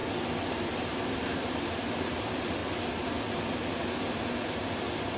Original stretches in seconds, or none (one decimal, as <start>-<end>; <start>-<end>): 0.0-0.5; 2.6-4.4